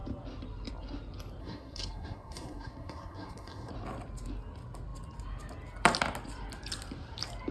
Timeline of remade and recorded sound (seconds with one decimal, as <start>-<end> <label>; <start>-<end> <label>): 0.0-1.4 recorded; 1.4-3.7 remade; 3.7-7.5 recorded